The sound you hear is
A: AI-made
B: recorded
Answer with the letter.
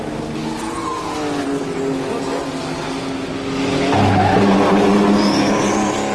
B